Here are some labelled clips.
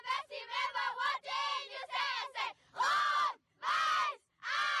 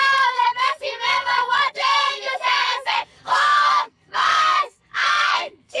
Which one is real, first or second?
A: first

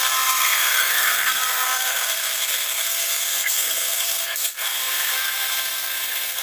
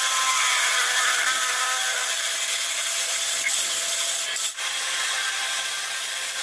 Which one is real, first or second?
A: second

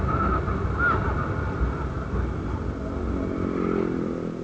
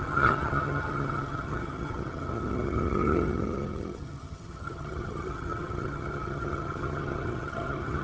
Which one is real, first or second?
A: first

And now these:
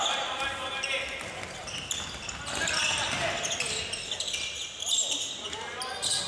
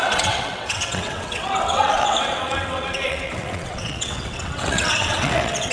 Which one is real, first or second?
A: first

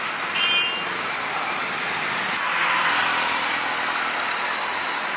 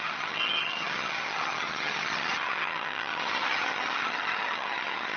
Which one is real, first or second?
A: first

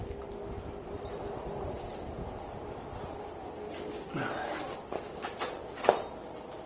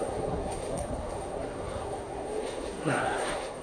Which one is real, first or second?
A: first